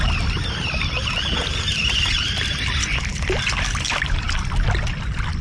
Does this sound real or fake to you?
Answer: fake